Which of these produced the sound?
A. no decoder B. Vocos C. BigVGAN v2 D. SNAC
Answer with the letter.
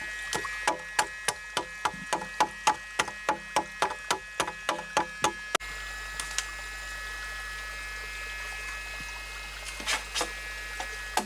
A